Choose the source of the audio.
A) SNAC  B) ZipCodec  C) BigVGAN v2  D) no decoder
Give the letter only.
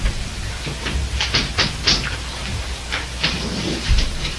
C